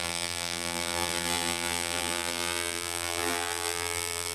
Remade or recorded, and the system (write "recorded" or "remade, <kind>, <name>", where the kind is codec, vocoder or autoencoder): remade, vocoder, BigVGAN v2